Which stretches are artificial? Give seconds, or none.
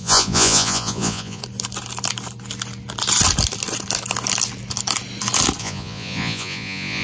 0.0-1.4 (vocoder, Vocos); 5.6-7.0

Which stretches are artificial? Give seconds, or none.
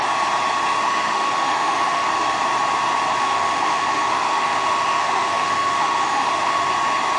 0.8-2.1 (autoencoder, DAC-VAE); 3.2-6.7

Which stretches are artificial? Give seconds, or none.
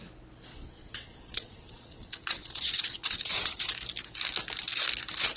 0.5-3.7 (vocoder, Vocos)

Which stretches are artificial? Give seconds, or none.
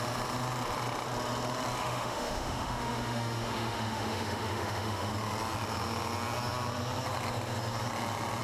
1.8-5.1 (autoencoder, DAC-VAE)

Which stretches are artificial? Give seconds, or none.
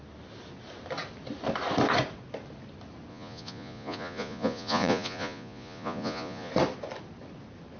3.1-6.5 (vocoder, Vocos)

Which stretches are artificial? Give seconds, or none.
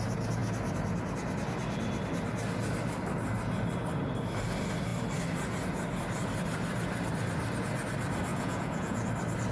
8.3-9.1 (vocoder, Vocos)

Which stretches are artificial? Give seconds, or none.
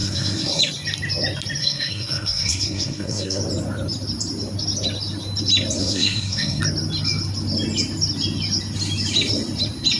0.0-0.6 (codec, SNAC); 1.6-3.4; 5.8-6.6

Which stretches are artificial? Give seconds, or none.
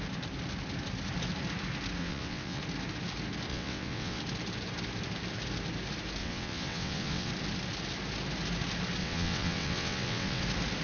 2.0-2.6 (vocoder, WaveNeXt); 3.5-4.2; 6.2-7.3; 9.0-10.4